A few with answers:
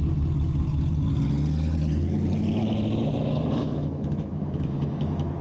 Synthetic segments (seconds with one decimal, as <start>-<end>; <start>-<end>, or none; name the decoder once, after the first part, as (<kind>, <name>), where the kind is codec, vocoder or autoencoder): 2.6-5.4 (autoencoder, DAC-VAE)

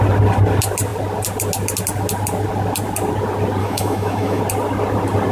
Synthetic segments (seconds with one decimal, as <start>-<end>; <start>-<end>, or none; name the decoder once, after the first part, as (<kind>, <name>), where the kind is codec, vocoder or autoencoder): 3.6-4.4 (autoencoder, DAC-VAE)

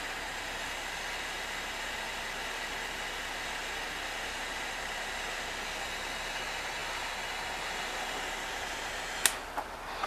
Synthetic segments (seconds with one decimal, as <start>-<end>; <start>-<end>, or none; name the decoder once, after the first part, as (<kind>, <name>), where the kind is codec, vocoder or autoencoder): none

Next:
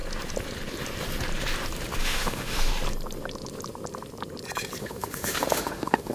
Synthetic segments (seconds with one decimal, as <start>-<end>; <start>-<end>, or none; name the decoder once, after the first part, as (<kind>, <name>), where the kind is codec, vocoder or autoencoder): 2.0-2.7 (autoencoder, DAC-VAE); 4.8-6.1

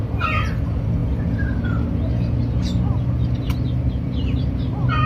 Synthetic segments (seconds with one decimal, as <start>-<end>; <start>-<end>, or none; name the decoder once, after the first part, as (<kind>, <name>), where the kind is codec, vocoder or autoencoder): none

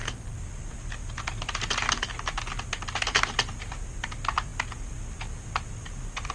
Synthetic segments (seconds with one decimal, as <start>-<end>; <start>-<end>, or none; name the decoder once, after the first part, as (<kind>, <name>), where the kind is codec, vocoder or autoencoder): none

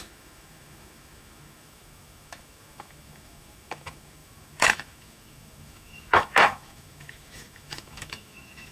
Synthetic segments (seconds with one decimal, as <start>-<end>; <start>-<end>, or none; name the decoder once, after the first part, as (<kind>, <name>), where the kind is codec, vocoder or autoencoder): 0.0-8.7 (autoencoder, DAC-VAE)